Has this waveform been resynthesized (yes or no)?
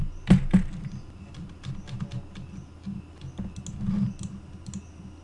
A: no